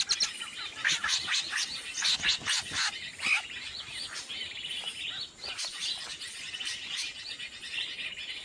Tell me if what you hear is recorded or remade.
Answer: recorded